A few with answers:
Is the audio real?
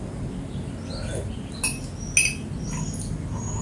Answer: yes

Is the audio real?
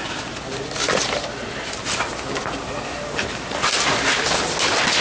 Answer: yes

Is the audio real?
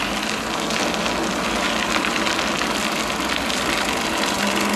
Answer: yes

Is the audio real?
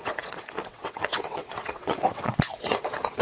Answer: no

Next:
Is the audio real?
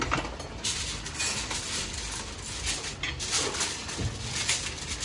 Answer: yes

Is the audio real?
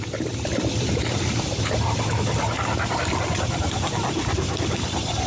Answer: no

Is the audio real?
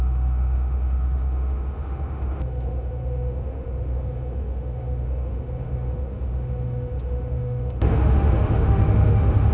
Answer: no